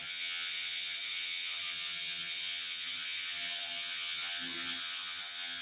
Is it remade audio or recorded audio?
remade